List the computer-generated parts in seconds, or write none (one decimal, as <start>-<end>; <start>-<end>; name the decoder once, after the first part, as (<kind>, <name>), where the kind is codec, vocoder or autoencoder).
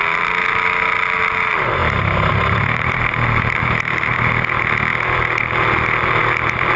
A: 1.8-4.2 (vocoder, BigVGAN v2)